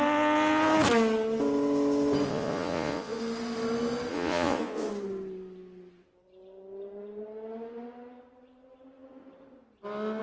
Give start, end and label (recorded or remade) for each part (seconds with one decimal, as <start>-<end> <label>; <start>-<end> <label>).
0.0-2.3 recorded; 2.3-3.2 remade; 3.2-4.1 recorded; 4.1-4.9 remade; 4.9-10.2 recorded